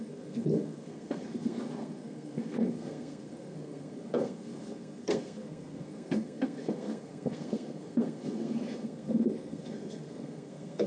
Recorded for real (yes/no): no